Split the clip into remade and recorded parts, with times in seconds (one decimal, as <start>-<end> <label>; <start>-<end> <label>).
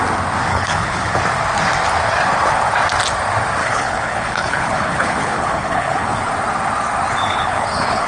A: 0.0-0.5 recorded; 0.5-1.2 remade; 1.2-3.6 recorded; 3.6-6.3 remade; 6.3-7.2 recorded; 7.2-8.1 remade